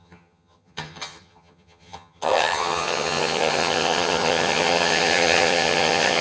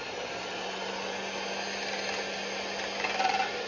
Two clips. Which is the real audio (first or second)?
second